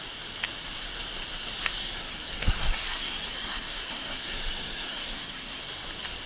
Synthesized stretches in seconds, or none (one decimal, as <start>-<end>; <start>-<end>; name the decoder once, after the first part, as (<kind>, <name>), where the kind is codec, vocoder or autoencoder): 1.8-5.6 (codec, SNAC)